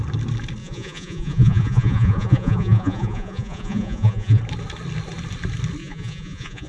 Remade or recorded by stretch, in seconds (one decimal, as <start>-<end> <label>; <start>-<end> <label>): 0.0-0.6 recorded; 0.6-4.4 remade; 4.4-5.8 recorded; 5.8-6.7 remade